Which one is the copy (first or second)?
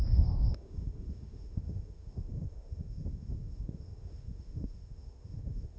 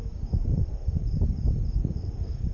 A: first